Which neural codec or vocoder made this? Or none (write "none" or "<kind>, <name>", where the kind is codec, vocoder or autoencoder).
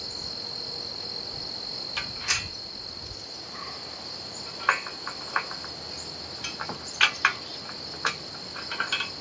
none